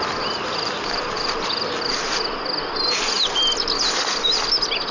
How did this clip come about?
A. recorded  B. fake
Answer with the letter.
A